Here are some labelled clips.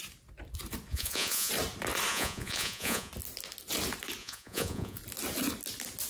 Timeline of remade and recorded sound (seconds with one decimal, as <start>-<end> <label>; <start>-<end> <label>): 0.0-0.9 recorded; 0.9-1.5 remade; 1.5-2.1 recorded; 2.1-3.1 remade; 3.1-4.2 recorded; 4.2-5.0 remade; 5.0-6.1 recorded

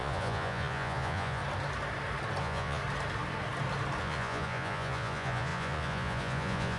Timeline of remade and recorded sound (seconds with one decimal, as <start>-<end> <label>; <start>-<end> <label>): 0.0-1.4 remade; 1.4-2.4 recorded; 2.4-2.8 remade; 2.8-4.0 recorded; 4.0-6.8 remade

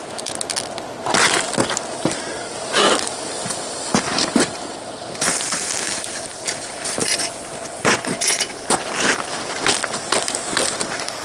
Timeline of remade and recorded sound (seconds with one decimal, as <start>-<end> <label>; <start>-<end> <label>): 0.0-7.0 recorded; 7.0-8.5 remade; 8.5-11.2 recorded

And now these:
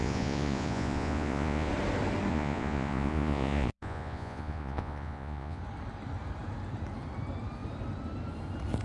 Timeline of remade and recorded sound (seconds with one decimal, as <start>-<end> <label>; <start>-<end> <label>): 0.0-1.7 remade; 1.7-2.3 recorded; 2.3-5.6 remade; 5.6-8.8 recorded

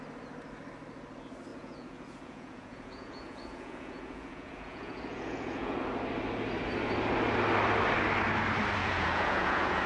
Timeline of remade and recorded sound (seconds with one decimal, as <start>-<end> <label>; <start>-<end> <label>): 0.0-1.5 recorded; 1.5-5.8 remade; 5.8-8.8 recorded; 8.8-9.9 remade

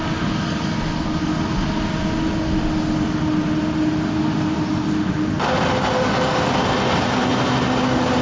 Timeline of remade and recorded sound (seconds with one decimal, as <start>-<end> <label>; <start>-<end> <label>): 0.0-8.2 recorded

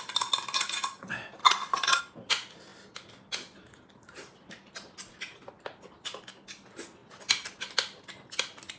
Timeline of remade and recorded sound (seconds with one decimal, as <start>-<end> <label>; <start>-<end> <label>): 0.0-1.4 recorded; 1.4-2.0 remade; 2.0-8.8 recorded

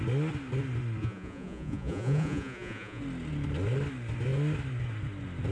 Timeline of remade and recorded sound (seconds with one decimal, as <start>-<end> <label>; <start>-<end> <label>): 0.0-1.0 recorded; 1.0-3.0 remade; 3.0-5.5 recorded